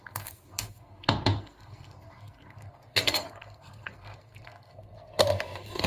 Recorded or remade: remade